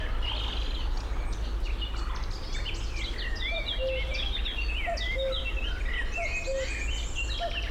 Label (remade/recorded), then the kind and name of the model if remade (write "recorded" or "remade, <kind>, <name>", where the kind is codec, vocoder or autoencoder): recorded